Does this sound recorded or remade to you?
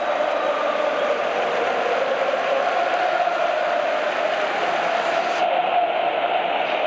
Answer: recorded